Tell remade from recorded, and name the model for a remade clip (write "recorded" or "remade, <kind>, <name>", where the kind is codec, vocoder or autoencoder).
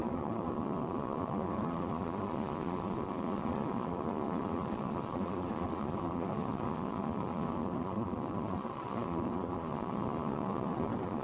remade, vocoder, Vocos